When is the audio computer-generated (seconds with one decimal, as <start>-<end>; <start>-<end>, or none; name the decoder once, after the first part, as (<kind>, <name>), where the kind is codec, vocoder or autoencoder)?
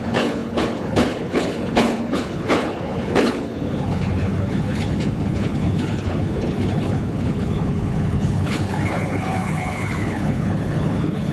0.0-11.3 (codec, HILCodec)